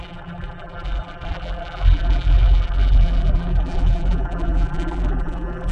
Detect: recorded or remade remade